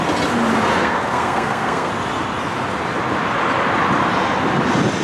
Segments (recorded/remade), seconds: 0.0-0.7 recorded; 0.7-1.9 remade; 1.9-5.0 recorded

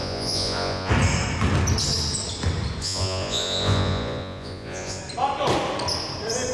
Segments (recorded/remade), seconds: 0.0-0.9 remade; 0.9-2.8 recorded; 2.8-5.0 remade; 5.0-6.5 recorded

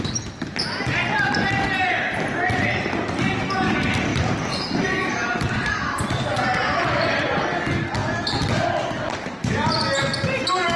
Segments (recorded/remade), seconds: 0.0-4.1 recorded; 4.1-7.2 remade; 7.2-10.8 recorded